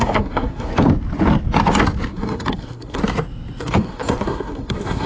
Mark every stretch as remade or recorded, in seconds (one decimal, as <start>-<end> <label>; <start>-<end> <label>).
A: 0.0-0.7 remade; 0.7-2.1 recorded; 2.1-3.0 remade; 3.0-3.6 recorded; 3.6-5.1 remade